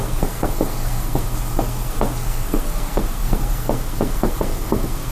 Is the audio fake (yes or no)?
yes